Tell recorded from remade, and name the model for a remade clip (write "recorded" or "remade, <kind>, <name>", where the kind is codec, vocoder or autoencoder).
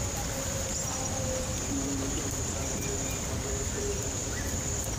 remade, vocoder, BigVGAN v2